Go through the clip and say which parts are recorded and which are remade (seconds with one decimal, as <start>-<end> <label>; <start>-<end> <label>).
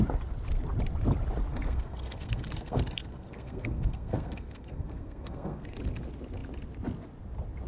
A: 0.0-1.5 recorded; 1.5-5.8 remade; 5.8-7.7 recorded